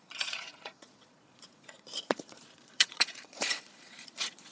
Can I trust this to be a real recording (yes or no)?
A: no